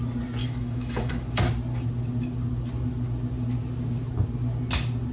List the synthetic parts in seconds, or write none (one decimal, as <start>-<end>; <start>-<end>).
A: 0.4-1.1